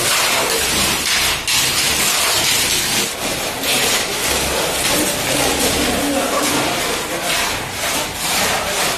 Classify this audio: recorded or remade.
recorded